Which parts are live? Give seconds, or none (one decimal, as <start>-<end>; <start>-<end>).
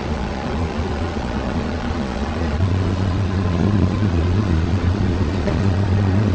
none